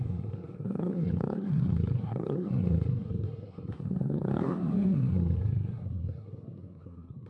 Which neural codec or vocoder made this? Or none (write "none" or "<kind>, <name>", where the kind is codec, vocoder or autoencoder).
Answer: codec, SNAC